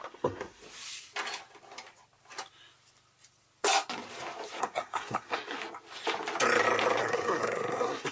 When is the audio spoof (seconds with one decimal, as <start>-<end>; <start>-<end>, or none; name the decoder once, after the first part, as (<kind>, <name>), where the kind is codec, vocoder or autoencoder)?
0.0-0.6 (codec, SNAC); 4.6-5.6; 7.0-8.1